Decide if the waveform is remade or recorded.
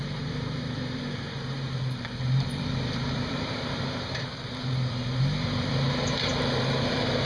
remade